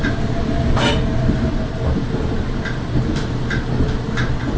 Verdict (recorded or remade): recorded